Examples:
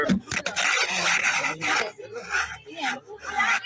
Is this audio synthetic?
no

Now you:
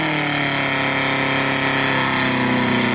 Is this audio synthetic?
no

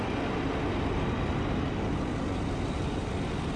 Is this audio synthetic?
no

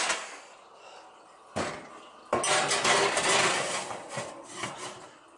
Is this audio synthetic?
no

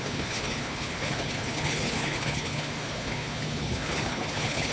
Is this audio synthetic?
yes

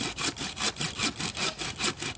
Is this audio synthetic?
no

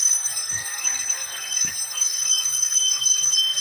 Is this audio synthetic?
yes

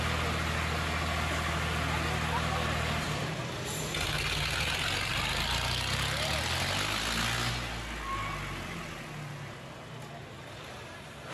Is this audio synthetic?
no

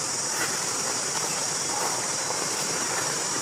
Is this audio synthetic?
yes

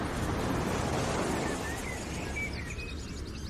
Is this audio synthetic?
no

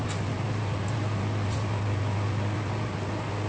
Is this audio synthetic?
no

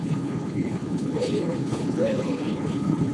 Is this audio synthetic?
yes